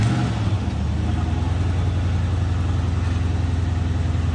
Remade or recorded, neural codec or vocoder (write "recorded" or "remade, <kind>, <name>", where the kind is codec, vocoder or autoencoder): recorded